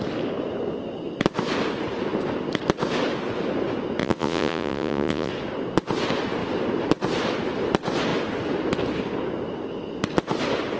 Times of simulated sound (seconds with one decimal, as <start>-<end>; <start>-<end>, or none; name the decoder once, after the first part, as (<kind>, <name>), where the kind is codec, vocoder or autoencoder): 4.0-5.3 (vocoder, Vocos)